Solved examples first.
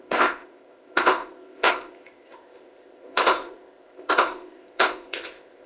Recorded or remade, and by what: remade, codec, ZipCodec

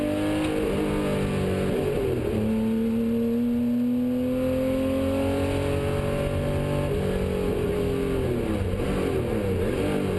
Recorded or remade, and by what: recorded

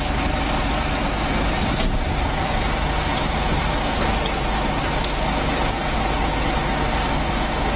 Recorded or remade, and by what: recorded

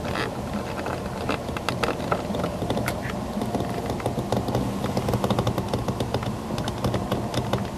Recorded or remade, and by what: recorded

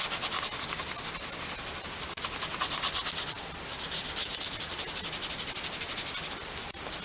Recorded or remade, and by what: recorded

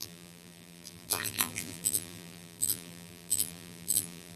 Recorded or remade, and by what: remade, vocoder, BigVGAN v2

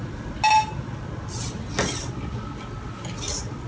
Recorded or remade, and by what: recorded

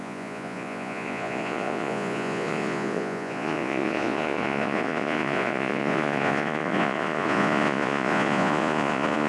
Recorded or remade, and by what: remade, vocoder, Vocos